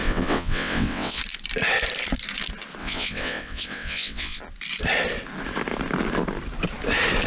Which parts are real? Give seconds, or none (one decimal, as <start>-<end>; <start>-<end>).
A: 1.2-2.8; 4.4-7.3